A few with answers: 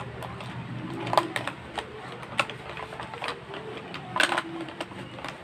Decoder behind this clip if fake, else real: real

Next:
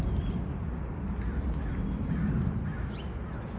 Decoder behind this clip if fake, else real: real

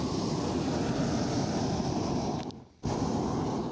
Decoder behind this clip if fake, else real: real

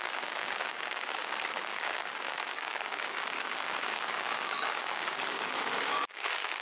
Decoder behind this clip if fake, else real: fake, codec, DAC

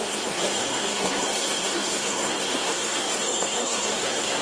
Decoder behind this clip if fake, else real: fake, codec, SNAC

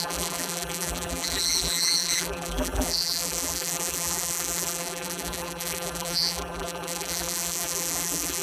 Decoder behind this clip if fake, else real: fake, vocoder, BigVGAN v2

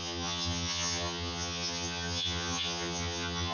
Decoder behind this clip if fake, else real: fake, vocoder, HiFi-GAN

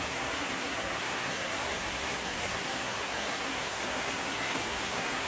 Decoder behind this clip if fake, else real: fake, codec, SNAC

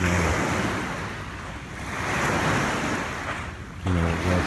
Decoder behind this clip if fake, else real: real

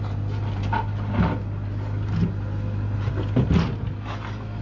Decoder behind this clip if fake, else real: real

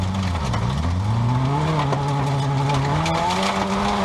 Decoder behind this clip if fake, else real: real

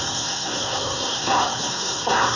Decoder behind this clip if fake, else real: fake, codec, SNAC